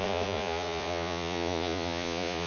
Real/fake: fake